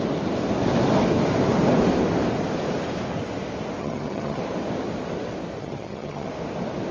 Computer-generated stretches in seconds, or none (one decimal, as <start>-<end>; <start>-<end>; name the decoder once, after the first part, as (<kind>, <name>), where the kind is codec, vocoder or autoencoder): 3.8-4.4 (vocoder, HiFi-GAN); 5.6-6.3